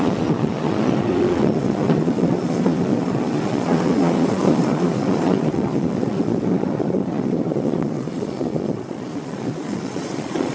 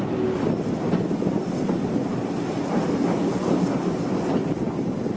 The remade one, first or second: first